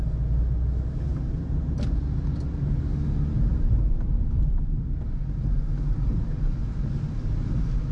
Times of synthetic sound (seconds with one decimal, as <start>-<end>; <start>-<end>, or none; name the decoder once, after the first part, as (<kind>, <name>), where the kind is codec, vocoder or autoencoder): 1.1-2.2 (vocoder, BigVGAN v2); 3.5-4.3